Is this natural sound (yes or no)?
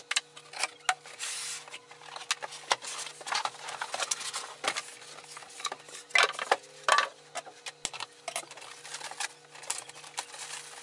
yes